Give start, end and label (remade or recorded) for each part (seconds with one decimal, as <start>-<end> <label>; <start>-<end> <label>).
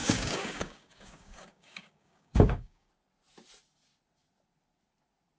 0.0-2.9 remade; 2.9-5.4 recorded